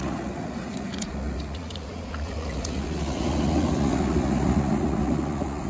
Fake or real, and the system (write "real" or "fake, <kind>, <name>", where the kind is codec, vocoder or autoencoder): fake, vocoder, Vocos